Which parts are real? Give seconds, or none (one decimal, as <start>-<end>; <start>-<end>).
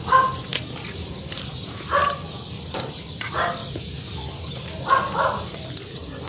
0.0-3.6; 4.9-6.3